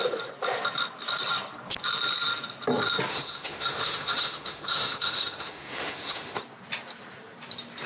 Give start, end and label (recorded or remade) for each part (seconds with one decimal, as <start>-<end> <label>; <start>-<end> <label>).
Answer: 0.0-3.1 recorded; 3.1-6.4 remade; 6.4-7.9 recorded